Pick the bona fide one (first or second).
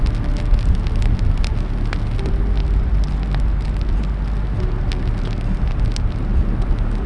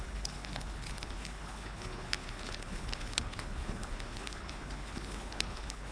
first